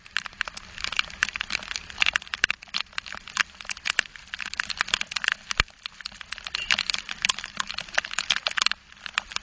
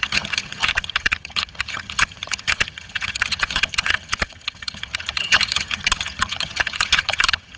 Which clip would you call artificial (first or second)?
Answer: second